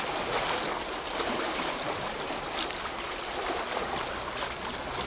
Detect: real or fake fake